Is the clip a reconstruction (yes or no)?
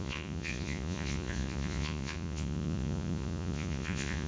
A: yes